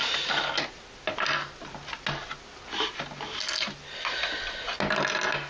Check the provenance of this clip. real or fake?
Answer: real